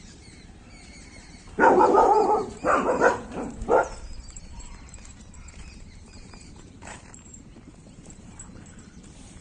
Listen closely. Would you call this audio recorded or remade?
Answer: remade